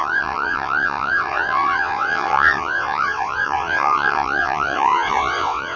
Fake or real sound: fake